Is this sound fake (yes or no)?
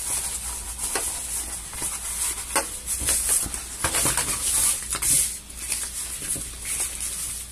no